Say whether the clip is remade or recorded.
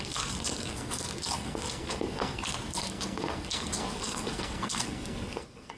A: remade